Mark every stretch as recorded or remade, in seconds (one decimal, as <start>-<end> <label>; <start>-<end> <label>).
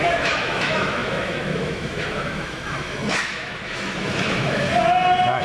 0.0-4.7 remade; 4.7-5.4 recorded